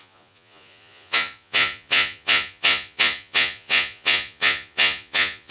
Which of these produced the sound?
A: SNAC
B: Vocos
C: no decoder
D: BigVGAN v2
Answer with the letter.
B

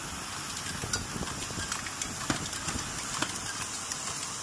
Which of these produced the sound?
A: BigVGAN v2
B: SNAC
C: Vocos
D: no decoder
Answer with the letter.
D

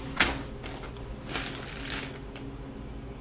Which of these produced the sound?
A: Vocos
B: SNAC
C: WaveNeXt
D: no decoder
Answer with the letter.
D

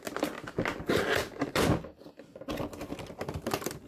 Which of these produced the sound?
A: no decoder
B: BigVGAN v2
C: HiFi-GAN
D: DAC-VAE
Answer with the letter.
A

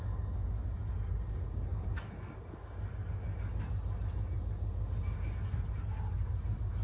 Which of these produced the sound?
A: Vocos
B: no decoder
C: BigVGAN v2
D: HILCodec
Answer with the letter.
B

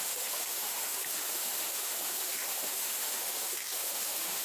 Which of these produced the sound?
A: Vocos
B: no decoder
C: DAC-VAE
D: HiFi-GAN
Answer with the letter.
C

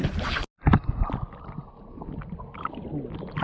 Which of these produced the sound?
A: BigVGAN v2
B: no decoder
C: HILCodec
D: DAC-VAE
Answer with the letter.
B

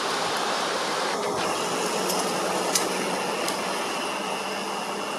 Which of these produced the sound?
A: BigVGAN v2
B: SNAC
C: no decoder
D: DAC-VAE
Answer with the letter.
C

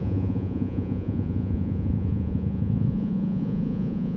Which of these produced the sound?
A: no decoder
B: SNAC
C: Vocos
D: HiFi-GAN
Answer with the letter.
C